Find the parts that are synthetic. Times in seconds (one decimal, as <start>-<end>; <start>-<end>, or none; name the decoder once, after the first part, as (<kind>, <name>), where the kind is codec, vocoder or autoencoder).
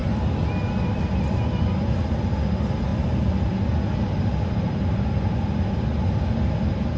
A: none